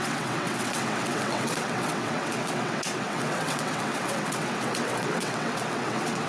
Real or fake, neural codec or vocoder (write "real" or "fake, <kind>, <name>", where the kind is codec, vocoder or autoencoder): fake, vocoder, WaveNeXt